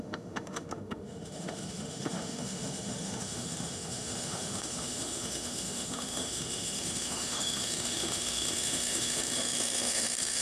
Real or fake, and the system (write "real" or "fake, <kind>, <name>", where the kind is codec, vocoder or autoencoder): fake, autoencoder, DAC-VAE